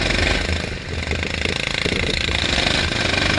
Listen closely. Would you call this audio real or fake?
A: real